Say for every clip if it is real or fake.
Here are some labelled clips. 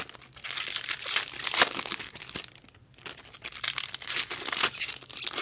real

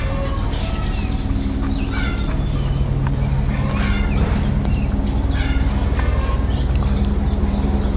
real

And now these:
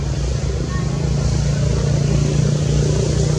real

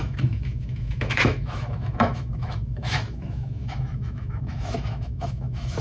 fake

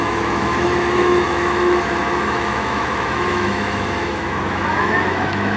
fake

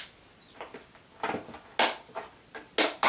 real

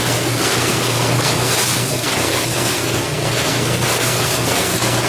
fake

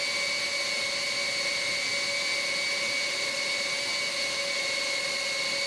real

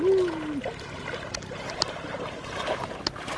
real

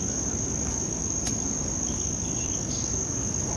fake